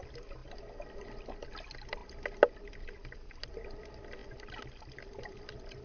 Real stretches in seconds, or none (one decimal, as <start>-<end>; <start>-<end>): 0.0-5.8